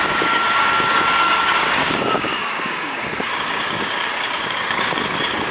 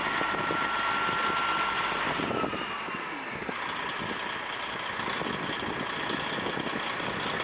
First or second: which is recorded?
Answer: second